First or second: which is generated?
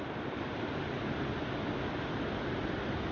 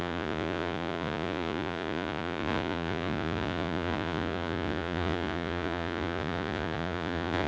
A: second